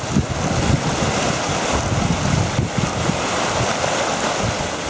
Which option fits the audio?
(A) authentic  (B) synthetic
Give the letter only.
A